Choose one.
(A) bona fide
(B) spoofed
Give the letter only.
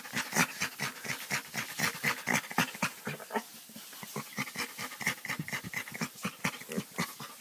A